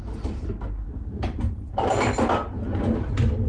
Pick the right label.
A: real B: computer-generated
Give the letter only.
A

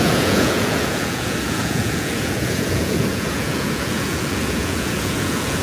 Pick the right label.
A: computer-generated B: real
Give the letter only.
A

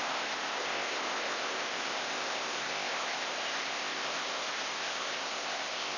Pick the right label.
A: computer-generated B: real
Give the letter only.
A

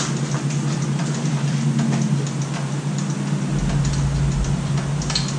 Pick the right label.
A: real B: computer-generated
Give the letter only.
A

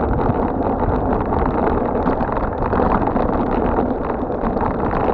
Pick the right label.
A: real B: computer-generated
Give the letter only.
A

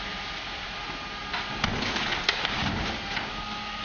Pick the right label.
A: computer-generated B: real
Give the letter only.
B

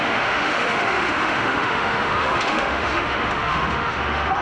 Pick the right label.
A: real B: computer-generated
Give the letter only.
B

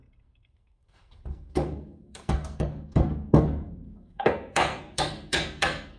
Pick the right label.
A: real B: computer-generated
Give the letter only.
B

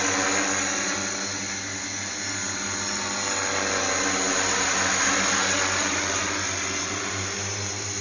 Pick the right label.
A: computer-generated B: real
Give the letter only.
B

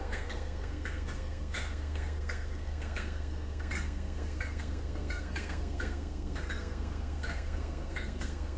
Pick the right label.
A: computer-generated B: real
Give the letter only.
A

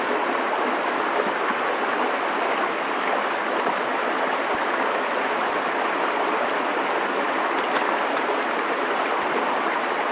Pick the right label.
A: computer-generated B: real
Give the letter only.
B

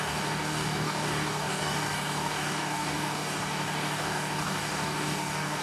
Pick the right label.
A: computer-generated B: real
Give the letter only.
A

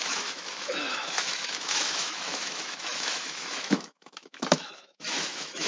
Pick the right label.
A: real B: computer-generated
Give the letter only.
B